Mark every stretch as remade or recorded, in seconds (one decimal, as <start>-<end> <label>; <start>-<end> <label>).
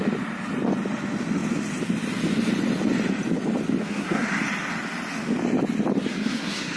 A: 0.0-3.8 recorded; 3.8-4.3 remade; 4.3-6.1 recorded; 6.1-6.8 remade